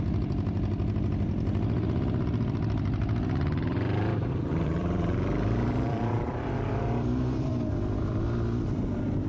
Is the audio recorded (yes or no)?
no